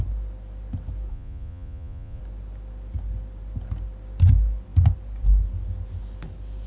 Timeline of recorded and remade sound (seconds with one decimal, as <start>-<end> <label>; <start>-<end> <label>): 0.0-1.1 recorded; 1.1-2.2 remade; 2.2-6.7 recorded